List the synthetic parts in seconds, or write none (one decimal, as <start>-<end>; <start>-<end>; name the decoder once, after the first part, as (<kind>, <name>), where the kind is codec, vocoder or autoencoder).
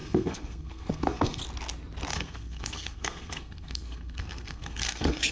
0.0-1.4 (codec, SNAC); 2.1-5.3